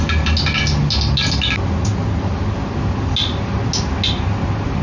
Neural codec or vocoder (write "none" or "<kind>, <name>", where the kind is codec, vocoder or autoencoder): none